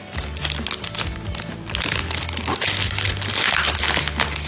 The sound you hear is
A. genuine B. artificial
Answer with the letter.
A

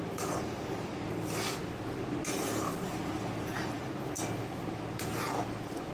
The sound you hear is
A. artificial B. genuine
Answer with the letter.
B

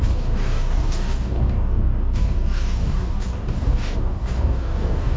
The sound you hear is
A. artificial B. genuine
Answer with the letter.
A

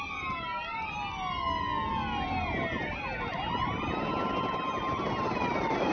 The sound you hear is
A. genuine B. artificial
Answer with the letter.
A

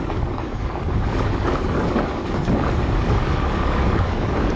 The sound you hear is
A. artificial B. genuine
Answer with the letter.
A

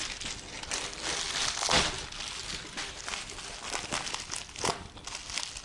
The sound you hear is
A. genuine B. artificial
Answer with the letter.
A